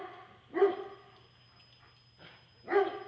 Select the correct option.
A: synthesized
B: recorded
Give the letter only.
B